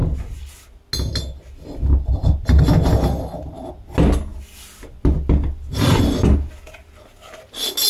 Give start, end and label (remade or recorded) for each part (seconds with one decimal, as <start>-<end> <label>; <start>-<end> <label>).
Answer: 0.0-7.9 recorded